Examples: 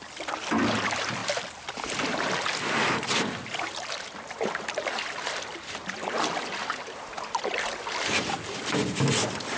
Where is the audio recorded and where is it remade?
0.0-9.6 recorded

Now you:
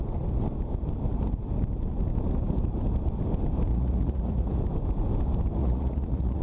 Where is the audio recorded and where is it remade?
0.0-3.7 recorded; 3.7-4.6 remade; 4.6-5.6 recorded; 5.6-6.4 remade

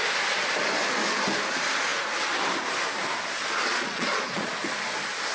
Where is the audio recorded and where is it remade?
0.0-3.7 recorded; 3.7-4.5 remade; 4.5-5.3 recorded

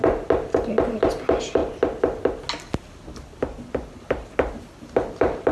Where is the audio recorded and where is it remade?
0.0-5.5 recorded

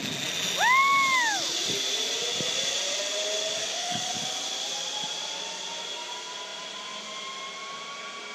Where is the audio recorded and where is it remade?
0.0-3.6 recorded; 3.6-4.1 remade; 4.1-8.3 recorded

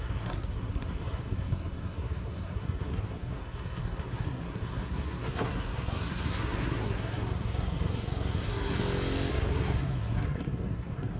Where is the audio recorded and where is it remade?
0.0-8.8 remade; 8.8-9.3 recorded; 9.3-11.2 remade